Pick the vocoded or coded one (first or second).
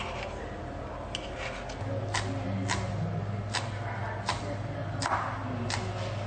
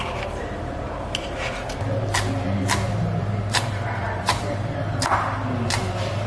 second